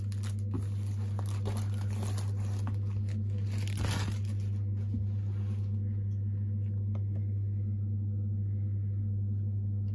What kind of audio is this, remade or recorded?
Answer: recorded